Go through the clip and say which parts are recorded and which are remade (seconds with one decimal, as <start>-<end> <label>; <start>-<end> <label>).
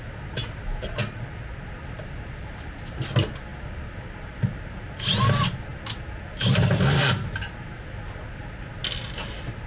0.0-9.7 recorded